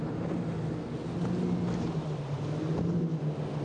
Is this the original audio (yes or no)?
yes